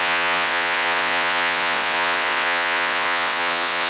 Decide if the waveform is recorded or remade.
remade